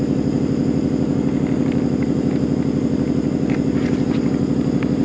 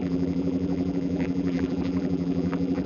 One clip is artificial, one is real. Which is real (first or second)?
first